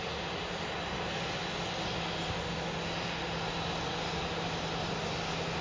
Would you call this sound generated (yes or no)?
no